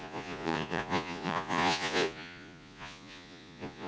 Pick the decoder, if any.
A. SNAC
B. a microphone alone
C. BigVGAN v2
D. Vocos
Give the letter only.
D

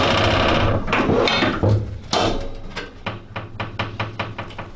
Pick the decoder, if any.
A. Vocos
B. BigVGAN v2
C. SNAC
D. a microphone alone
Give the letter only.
D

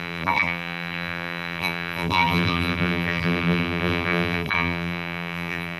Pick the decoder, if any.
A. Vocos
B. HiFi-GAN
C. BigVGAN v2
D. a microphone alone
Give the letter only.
C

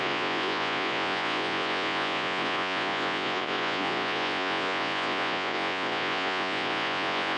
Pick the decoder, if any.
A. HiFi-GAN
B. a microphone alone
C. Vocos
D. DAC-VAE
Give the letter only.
C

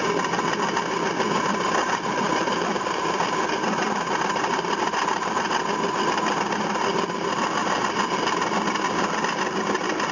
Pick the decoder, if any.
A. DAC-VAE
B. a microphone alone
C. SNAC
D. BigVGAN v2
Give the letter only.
B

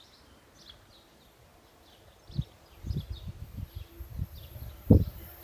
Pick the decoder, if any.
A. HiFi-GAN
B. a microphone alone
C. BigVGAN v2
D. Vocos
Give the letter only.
B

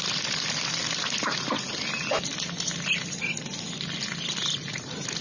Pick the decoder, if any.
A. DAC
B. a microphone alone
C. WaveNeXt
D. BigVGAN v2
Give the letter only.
B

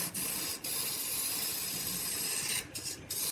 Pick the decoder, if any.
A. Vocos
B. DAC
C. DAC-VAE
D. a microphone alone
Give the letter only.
D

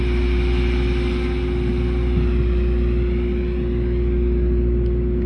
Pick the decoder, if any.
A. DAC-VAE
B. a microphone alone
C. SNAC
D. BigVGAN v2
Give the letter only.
B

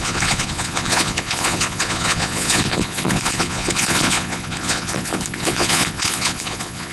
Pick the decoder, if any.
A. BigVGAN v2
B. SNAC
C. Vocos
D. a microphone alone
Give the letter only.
C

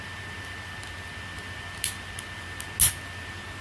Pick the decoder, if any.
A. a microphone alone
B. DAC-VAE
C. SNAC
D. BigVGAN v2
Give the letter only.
A